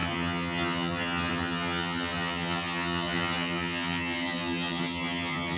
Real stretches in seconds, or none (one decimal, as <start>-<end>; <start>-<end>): none